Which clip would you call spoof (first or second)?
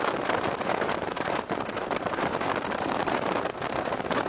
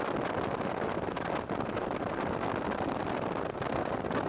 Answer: first